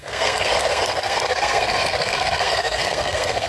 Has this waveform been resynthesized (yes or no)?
yes